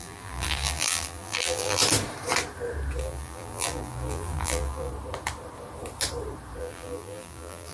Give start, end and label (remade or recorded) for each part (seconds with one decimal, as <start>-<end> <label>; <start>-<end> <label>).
0.0-1.8 remade; 1.8-3.0 recorded; 3.0-4.9 remade; 4.9-6.6 recorded; 6.6-7.7 remade